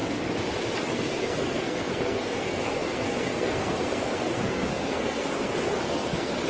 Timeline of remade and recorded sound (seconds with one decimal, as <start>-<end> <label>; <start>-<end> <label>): 0.0-0.9 recorded; 0.9-6.5 remade